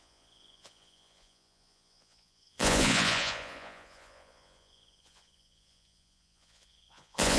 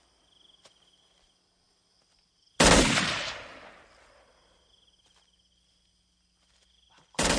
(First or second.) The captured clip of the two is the second